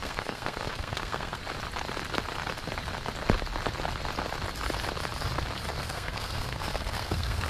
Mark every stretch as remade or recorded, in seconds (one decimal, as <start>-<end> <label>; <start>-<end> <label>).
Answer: 0.0-1.4 remade; 1.4-5.7 recorded; 5.7-7.5 remade

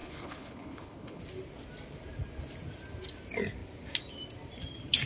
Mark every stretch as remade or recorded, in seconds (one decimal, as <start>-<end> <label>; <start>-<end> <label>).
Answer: 0.0-1.2 remade; 1.2-5.1 recorded

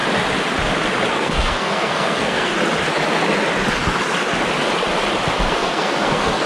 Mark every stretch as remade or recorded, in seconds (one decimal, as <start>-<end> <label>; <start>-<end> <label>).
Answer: 0.0-1.1 recorded; 1.1-2.5 remade; 2.5-5.4 recorded; 5.4-6.5 remade

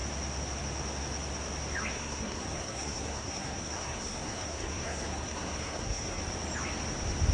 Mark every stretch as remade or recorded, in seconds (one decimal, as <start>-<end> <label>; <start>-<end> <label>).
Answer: 0.0-1.9 recorded; 1.9-6.2 remade; 6.2-7.3 recorded

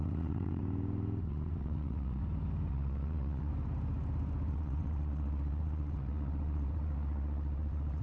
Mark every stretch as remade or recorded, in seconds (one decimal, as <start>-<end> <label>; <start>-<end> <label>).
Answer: 0.0-0.6 remade; 0.6-1.3 recorded; 1.3-2.2 remade; 2.2-2.7 recorded; 2.7-3.5 remade; 3.5-4.5 recorded; 4.5-8.0 remade

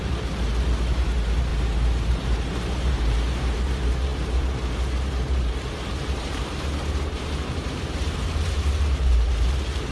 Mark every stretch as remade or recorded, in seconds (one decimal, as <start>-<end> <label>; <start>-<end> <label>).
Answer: 0.0-9.9 remade